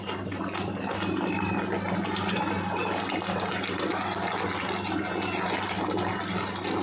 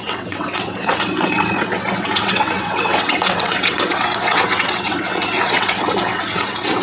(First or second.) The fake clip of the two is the second